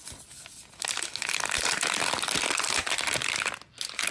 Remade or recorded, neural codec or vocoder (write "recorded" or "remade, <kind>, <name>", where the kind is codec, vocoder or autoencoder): recorded